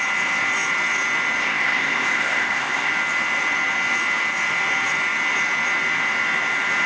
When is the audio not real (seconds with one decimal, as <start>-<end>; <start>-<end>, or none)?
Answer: 1.4-2.9